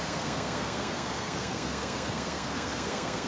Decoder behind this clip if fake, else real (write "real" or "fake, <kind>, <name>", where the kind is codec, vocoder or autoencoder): fake, codec, SNAC